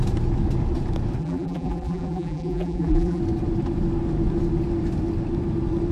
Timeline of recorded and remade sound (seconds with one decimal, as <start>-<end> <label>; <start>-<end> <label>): 0.0-1.2 recorded; 1.2-3.2 remade; 3.2-5.9 recorded